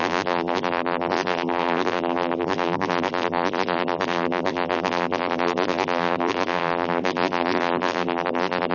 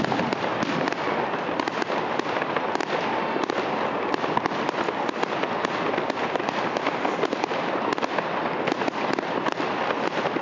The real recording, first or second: second